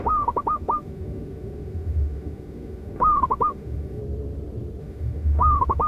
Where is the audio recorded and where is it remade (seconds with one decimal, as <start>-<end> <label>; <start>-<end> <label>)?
0.0-4.0 remade; 4.0-4.8 recorded; 4.8-5.9 remade